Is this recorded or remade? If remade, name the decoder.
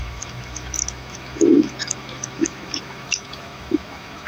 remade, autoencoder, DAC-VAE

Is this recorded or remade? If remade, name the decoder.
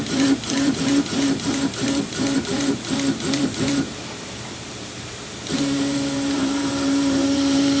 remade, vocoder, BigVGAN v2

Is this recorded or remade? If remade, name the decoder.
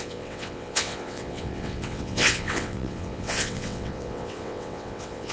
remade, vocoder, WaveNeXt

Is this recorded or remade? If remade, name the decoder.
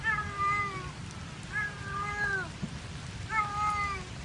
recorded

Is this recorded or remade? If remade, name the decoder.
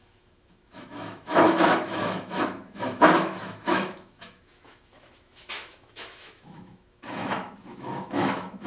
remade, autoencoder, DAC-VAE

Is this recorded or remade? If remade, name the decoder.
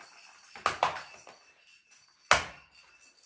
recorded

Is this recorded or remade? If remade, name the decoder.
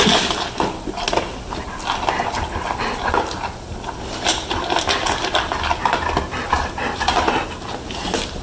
recorded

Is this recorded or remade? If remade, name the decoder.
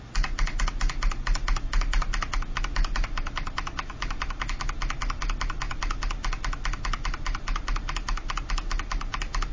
recorded